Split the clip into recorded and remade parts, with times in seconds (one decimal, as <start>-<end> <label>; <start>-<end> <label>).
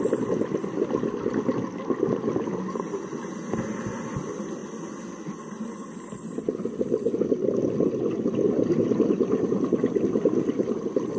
0.0-11.2 recorded